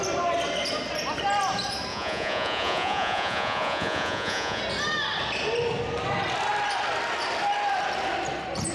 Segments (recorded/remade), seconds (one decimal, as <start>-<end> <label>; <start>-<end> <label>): 0.0-1.9 recorded; 1.9-4.6 remade; 4.6-8.7 recorded